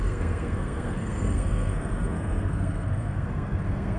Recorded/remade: remade